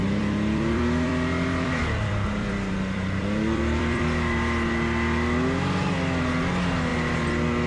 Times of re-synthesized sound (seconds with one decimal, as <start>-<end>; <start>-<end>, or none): 0.0-4.0